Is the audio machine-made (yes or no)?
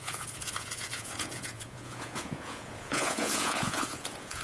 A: yes